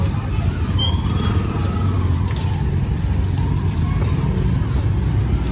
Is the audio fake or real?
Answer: real